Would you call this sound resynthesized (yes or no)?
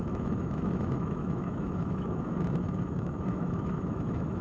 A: yes